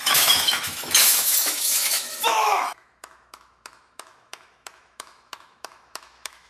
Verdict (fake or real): fake